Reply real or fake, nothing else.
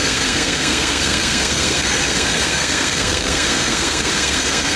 fake